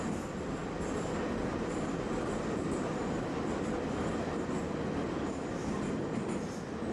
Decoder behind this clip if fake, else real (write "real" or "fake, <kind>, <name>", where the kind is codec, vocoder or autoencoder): real